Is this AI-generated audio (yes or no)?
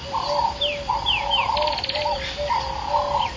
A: no